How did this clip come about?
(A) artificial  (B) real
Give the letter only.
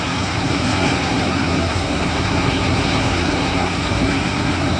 A